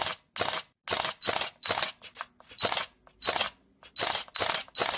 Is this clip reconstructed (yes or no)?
no